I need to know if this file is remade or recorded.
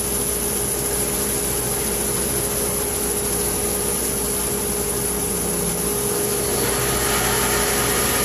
recorded